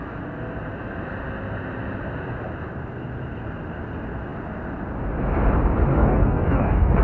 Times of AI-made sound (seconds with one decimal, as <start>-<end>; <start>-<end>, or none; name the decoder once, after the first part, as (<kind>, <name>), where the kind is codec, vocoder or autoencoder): 5.9-7.0 (codec, DAC)